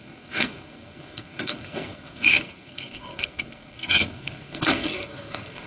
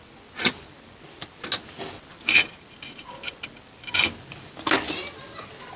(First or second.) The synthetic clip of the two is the first